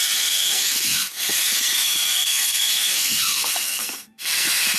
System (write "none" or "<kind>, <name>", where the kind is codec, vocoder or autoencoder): codec, SNAC